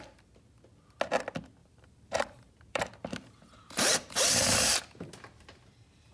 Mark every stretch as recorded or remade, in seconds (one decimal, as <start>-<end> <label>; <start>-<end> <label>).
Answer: 0.0-1.6 recorded; 1.6-4.8 remade; 4.8-6.1 recorded